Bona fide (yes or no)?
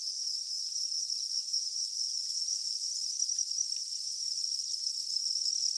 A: yes